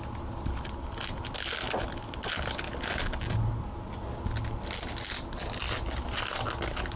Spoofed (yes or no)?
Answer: no